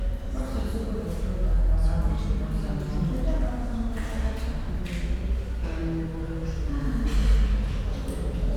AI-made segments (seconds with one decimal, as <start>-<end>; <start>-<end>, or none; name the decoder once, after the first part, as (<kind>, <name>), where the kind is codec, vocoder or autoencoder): none